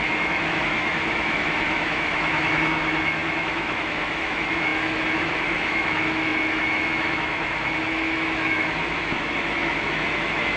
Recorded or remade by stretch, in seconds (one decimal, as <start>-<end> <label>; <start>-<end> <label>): 0.0-10.6 remade